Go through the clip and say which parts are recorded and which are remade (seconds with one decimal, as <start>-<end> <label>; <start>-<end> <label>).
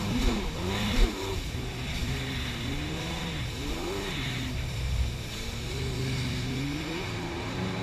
0.0-7.8 remade